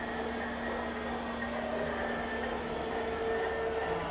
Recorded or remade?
recorded